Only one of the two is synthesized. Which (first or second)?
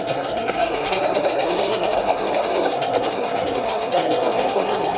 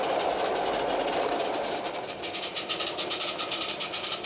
first